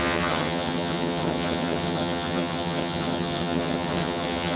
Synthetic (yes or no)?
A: yes